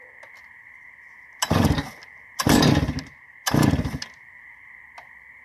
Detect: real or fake real